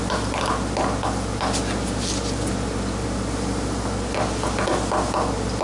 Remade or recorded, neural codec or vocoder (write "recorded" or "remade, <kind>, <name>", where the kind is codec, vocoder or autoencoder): recorded